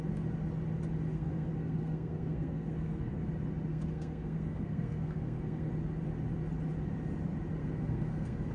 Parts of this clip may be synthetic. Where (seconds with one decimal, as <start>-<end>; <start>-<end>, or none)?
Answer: 1.1-3.3; 3.7-5.7; 7.6-8.5